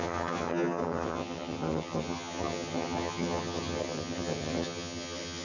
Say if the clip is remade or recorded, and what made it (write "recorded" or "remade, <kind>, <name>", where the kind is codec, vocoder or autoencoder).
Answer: remade, vocoder, HiFi-GAN